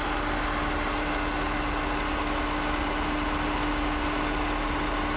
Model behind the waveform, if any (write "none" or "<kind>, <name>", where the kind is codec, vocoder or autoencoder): none